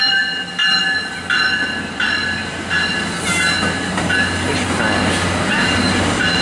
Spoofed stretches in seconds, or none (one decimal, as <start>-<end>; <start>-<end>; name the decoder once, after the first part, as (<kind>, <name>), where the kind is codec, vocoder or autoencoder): none